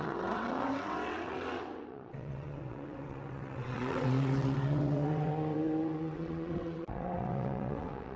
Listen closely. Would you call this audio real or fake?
fake